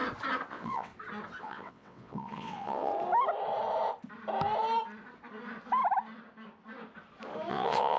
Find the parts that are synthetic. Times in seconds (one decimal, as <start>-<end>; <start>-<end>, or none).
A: 0.5-0.9; 1.4-2.9; 7.5-8.0